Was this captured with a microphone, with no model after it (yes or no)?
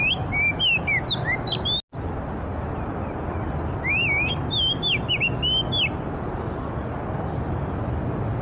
yes